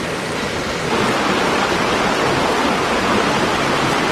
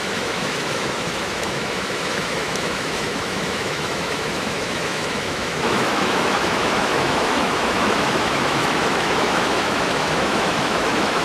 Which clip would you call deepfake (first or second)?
second